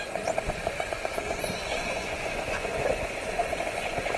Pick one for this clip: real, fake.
fake